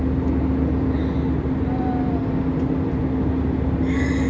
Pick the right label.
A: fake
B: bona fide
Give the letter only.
B